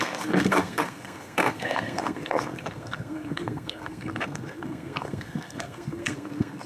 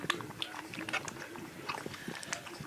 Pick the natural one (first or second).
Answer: second